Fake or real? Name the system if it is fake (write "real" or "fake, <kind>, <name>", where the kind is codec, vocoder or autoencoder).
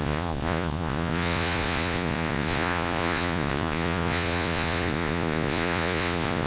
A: fake, vocoder, Vocos